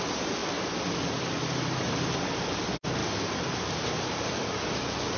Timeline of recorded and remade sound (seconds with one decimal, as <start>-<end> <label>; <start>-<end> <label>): 0.0-5.2 recorded